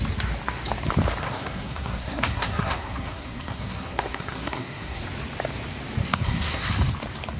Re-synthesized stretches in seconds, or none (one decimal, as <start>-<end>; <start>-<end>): 1.2-5.0; 6.0-6.7